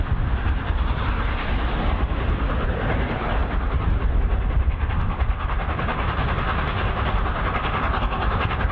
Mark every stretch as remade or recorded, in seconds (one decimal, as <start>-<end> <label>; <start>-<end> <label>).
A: 0.0-8.7 recorded